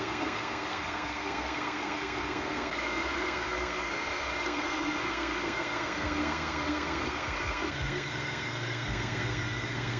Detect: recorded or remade remade